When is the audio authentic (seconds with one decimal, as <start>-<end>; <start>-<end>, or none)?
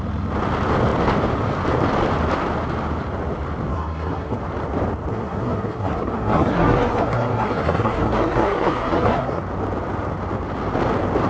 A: 0.0-3.7; 4.4-5.1; 9.4-11.3